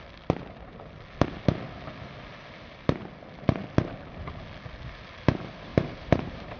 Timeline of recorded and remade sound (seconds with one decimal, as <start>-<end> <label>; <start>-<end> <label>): 0.0-5.7 recorded; 5.7-6.6 remade

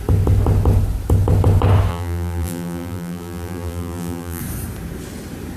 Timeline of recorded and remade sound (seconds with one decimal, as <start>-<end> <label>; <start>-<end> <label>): 0.0-1.9 recorded; 1.9-4.4 remade; 4.4-5.6 recorded

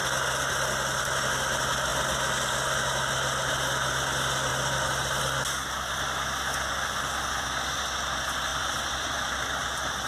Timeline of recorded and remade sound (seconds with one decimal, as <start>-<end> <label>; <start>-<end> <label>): 0.0-8.5 recorded; 8.5-9.6 remade; 9.6-10.1 recorded

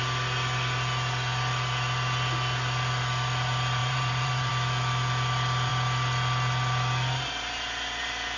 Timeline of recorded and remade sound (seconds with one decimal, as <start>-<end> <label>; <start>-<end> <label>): 0.0-3.8 recorded; 3.8-4.5 remade; 4.5-8.4 recorded

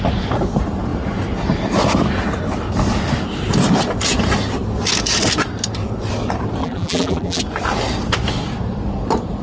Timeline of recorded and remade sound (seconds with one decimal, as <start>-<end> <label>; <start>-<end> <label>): 0.0-6.6 recorded; 6.6-7.4 remade; 7.4-9.4 recorded

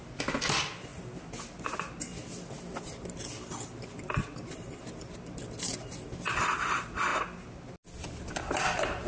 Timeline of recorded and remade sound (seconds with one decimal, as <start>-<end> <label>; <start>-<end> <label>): 0.0-9.1 recorded

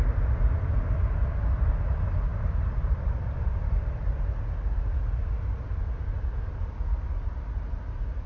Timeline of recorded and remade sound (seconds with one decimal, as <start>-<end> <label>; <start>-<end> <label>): 0.0-8.3 recorded